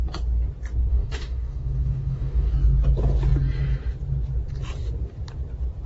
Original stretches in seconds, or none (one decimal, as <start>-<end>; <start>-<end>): 0.0-0.9; 2.5-5.9